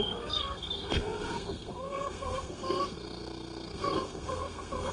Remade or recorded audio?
remade